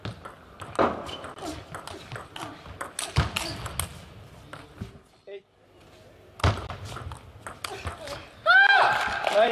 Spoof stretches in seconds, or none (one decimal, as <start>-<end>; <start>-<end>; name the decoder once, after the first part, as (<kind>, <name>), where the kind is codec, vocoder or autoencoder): none